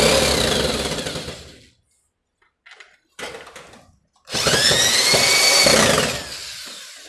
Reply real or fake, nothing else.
real